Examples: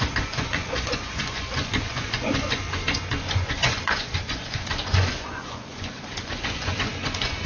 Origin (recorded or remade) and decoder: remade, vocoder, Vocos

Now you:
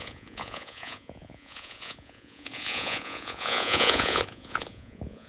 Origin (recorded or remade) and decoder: remade, vocoder, Vocos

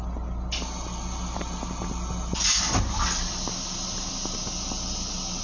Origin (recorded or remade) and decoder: recorded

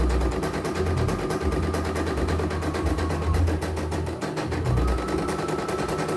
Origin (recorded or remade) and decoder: recorded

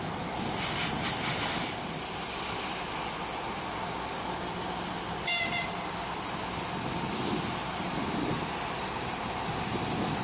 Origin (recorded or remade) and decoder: recorded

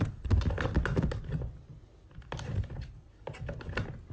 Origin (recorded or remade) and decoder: recorded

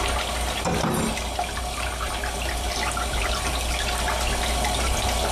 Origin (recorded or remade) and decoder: recorded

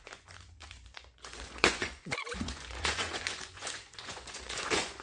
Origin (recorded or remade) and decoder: remade, vocoder, Vocos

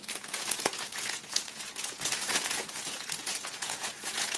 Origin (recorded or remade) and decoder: remade, vocoder, Vocos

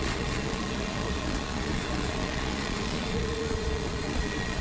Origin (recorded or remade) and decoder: remade, vocoder, Vocos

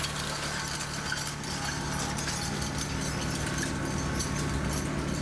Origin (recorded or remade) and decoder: recorded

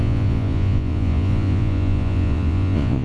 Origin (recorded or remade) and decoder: remade, vocoder, Vocos